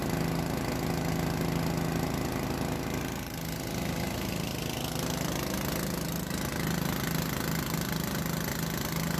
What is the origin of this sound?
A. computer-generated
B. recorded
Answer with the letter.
B